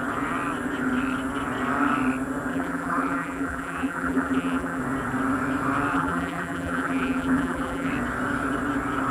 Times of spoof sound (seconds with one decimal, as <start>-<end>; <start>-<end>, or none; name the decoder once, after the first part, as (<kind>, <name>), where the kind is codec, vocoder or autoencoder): 2.5-4.8 (vocoder, BigVGAN v2); 5.9-7.9